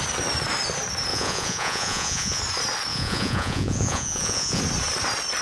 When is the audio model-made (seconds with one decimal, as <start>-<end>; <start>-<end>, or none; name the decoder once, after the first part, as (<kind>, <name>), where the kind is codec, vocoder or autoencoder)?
1.1-2.4 (vocoder, Vocos); 2.9-4.6